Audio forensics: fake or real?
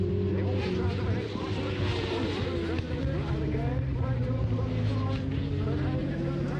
real